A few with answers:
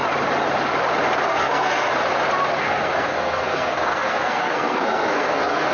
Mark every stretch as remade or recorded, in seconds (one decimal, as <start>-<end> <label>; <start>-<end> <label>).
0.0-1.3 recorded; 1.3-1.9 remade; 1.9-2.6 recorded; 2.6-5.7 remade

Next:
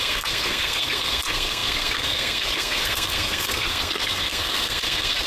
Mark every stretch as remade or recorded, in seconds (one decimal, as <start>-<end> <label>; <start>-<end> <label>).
0.0-5.3 remade

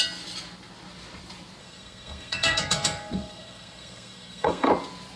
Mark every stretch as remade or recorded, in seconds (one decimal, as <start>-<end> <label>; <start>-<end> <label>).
0.0-1.6 recorded; 1.6-4.7 remade; 4.7-5.2 recorded

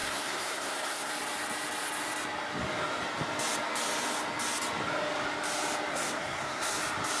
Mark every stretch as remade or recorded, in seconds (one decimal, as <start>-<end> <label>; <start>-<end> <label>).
0.0-1.1 remade; 1.1-5.9 recorded; 5.9-6.8 remade; 6.8-7.2 recorded

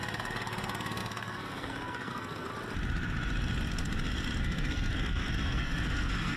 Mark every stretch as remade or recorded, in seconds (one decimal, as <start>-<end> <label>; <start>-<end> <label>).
0.0-2.5 remade; 2.5-4.4 recorded; 4.4-6.4 remade

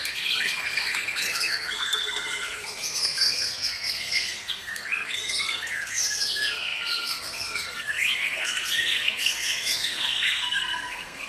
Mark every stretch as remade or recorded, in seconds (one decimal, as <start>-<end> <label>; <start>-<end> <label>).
0.0-11.3 remade